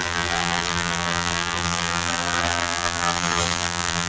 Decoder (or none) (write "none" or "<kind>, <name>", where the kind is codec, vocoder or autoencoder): vocoder, BigVGAN v2